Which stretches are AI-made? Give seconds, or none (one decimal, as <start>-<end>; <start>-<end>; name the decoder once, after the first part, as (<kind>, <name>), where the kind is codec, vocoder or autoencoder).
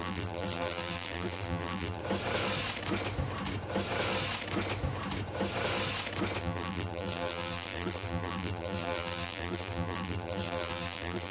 0.0-2.0 (vocoder, BigVGAN v2); 6.4-11.3